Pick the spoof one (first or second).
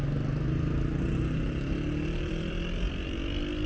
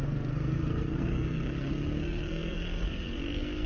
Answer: second